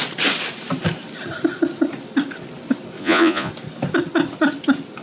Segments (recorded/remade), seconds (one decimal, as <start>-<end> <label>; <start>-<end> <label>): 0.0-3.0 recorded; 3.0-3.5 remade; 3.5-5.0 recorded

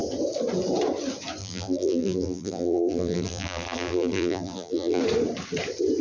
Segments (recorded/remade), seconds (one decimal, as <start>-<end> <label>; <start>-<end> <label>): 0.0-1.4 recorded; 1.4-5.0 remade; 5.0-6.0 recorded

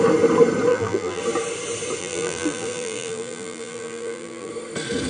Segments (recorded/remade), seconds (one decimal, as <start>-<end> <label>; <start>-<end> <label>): 0.0-0.7 recorded; 0.7-1.2 remade; 1.2-2.0 recorded; 2.0-4.5 remade; 4.5-5.1 recorded

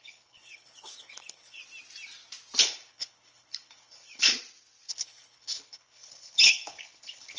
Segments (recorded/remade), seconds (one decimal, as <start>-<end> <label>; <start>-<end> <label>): 0.0-1.6 remade; 1.6-2.6 recorded; 2.6-4.3 remade; 4.3-4.9 recorded; 4.9-7.4 remade